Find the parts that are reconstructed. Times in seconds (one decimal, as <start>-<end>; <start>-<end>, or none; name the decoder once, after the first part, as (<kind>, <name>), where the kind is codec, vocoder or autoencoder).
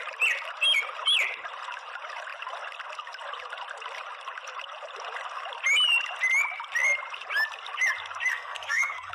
8.3-9.1 (codec, SNAC)